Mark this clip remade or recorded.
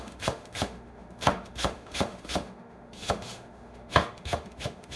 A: remade